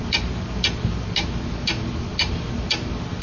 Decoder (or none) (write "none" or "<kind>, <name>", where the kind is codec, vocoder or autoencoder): none